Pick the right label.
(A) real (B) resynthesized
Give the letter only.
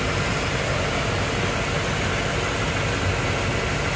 A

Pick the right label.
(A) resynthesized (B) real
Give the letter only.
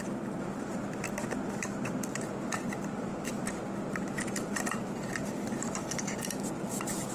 B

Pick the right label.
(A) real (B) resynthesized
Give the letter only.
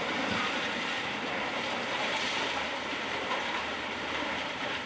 B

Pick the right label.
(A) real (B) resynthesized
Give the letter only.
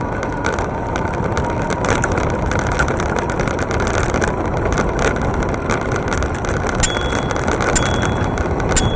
A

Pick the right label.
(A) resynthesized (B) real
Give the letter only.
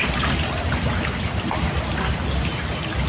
B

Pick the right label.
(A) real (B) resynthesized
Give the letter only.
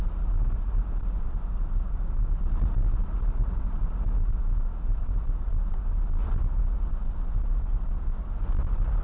A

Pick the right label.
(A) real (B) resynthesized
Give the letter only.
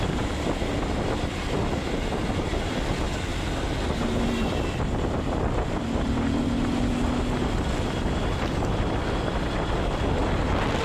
A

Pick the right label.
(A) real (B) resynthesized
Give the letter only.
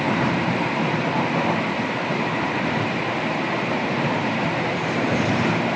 B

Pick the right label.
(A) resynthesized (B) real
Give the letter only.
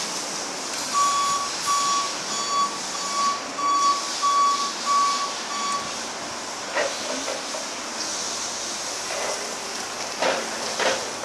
B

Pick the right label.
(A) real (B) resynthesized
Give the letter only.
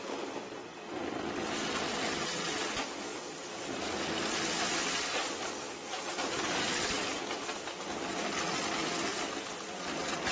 A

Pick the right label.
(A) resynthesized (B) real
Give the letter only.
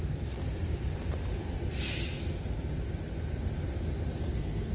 B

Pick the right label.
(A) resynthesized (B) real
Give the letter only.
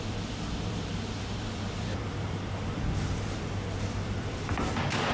A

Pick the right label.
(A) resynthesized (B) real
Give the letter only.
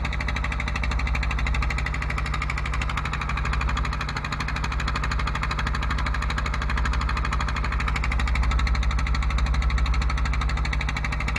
B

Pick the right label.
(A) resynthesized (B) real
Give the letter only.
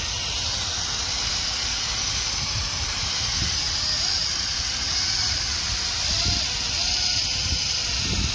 B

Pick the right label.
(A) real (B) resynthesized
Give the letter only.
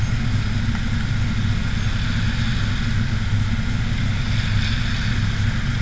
A